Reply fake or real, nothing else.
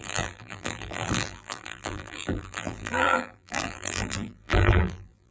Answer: fake